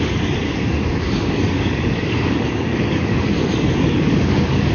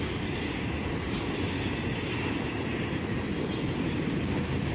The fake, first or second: first